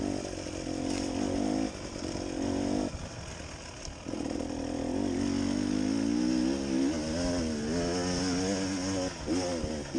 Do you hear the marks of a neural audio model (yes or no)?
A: no